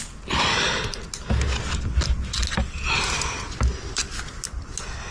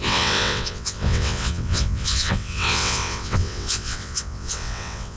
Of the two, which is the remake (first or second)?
second